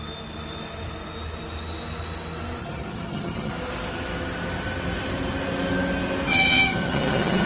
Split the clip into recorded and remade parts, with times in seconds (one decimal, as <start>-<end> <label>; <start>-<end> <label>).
0.0-2.6 recorded; 2.6-3.5 remade; 3.5-6.3 recorded; 6.3-7.5 remade